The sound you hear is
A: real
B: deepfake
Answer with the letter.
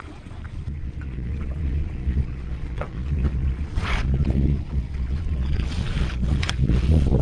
B